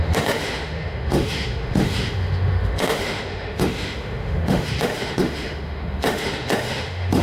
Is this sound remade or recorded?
remade